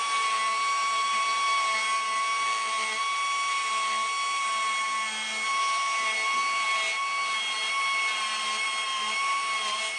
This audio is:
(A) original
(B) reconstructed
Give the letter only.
A